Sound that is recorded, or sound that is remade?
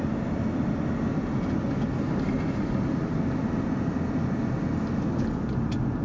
recorded